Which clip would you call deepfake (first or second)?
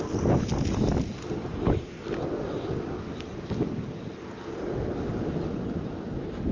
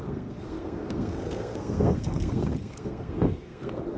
second